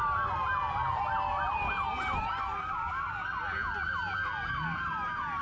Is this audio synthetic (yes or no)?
no